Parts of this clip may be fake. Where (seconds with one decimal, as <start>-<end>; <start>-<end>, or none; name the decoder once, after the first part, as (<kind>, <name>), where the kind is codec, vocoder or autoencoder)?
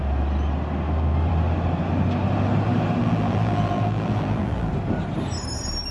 3.0-4.7 (vocoder, BigVGAN v2)